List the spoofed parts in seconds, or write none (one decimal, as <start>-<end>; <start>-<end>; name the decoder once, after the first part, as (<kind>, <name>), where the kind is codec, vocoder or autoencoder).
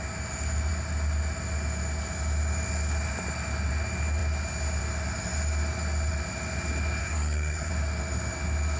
7.0-7.7 (codec, SNAC)